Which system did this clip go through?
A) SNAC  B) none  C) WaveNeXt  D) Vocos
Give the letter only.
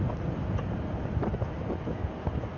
B